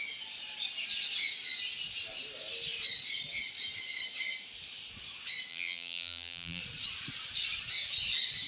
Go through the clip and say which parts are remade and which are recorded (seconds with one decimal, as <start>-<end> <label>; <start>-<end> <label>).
0.0-5.5 recorded; 5.5-6.6 remade; 6.6-8.5 recorded